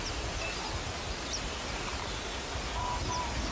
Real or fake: real